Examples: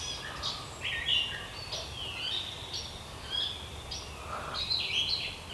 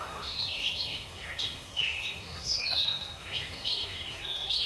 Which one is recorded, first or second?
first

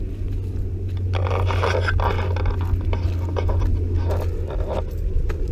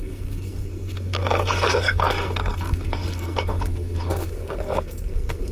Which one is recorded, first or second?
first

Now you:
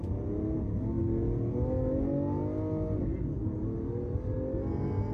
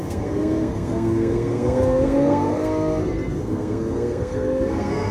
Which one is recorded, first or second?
first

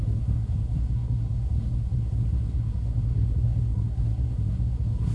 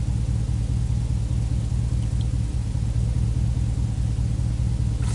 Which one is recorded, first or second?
second